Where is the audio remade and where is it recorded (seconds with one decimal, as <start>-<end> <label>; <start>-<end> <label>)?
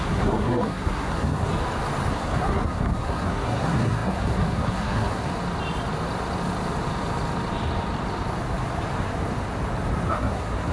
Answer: 0.0-1.5 remade; 1.5-2.1 recorded; 2.1-5.3 remade; 5.3-10.1 recorded; 10.1-10.7 remade